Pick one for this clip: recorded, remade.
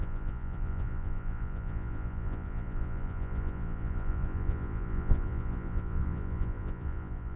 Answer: remade